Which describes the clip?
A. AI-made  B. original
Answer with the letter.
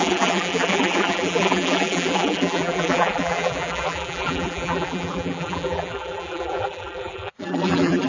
A